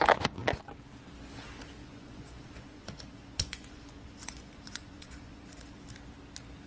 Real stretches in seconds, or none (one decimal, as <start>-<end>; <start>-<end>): 0.0-1.8; 5.8-6.7